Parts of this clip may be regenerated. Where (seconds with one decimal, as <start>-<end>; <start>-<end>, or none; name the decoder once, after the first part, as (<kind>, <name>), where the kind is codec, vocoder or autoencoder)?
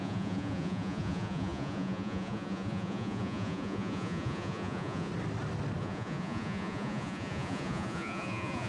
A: 0.0-5.1 (vocoder, Vocos); 5.8-8.7